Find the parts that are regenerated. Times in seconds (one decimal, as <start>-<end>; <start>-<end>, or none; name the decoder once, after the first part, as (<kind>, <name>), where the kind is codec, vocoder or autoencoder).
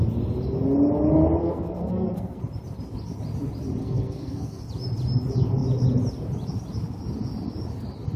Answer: 1.4-2.4 (codec, SNAC); 3.8-4.6